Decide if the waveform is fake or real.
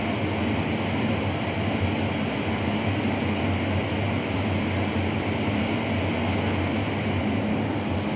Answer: real